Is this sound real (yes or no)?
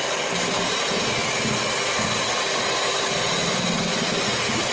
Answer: yes